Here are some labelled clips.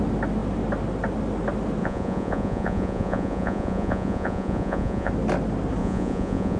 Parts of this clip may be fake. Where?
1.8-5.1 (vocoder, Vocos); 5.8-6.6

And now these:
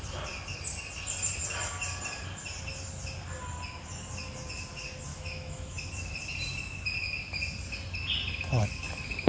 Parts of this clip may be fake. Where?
5.1-5.9 (autoencoder, DAC-VAE)

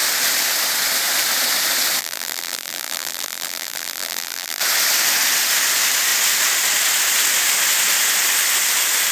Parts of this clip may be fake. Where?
2.0-4.6 (vocoder, BigVGAN v2)

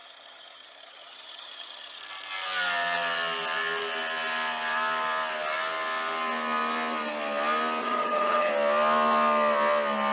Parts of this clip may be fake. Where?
0.0-2.0 (vocoder, HiFi-GAN); 7.8-8.5

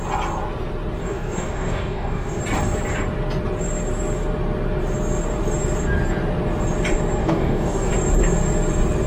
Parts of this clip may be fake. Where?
1.0-2.4 (codec, DAC); 7.2-7.9

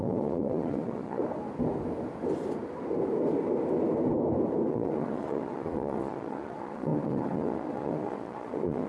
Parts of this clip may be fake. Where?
0.0-1.2 (vocoder, Vocos); 4.7-8.9

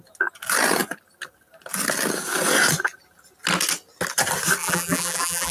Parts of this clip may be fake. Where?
4.6-5.5 (vocoder, BigVGAN v2)